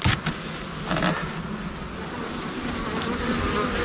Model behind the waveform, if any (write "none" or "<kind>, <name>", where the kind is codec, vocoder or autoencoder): none